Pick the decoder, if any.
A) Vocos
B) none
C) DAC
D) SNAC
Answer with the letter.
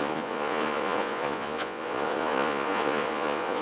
A